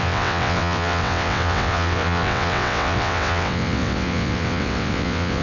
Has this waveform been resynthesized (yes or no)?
yes